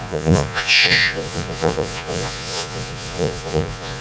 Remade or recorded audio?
remade